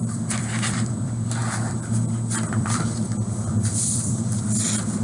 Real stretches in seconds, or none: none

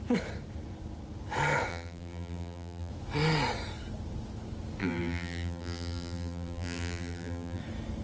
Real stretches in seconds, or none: 0.0-1.7; 2.9-4.8; 7.6-8.0

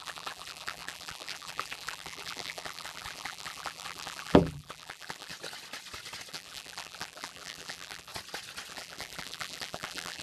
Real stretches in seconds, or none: 5.3-6.3; 8.1-8.7

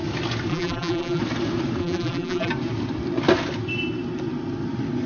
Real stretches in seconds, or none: 0.0-0.5; 1.2-1.8; 2.5-5.1

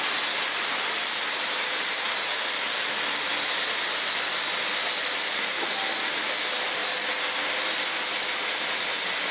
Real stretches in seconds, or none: 0.0-9.3

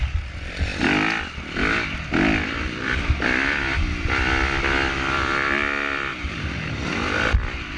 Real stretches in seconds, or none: 0.0-6.1; 6.8-7.8